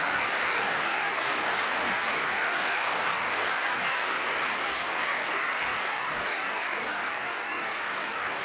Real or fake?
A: fake